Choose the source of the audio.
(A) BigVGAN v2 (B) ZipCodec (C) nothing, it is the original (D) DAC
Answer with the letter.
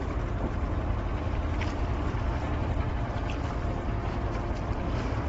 C